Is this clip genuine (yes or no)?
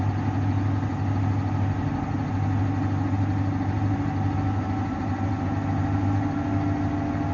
yes